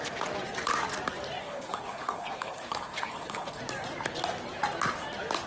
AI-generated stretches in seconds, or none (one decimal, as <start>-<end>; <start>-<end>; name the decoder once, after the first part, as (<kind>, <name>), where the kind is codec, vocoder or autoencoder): 1.4-3.6 (codec, HILCodec)